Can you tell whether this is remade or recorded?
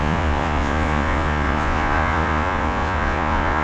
remade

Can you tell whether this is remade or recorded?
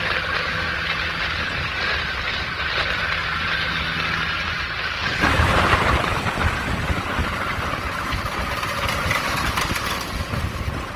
recorded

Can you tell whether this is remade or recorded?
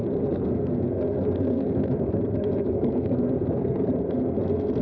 remade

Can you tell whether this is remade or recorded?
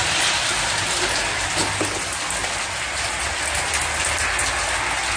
recorded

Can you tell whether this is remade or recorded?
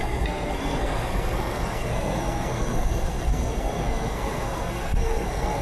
remade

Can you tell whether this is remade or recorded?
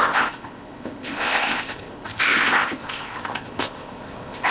remade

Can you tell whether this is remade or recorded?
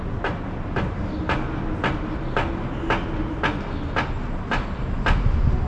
recorded